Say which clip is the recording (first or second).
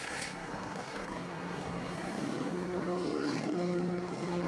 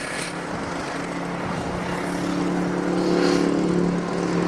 second